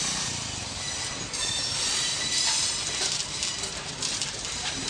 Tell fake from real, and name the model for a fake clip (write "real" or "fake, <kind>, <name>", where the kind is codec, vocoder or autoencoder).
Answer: real